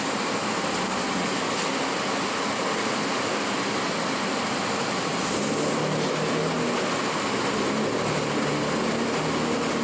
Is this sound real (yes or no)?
yes